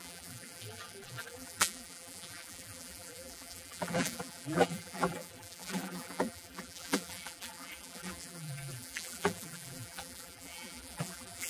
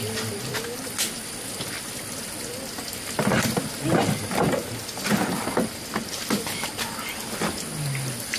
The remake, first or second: first